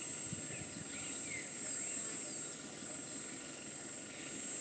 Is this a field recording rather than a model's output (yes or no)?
yes